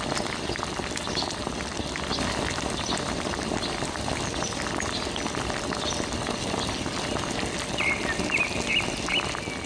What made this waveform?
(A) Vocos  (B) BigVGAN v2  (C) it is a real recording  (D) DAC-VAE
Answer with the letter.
C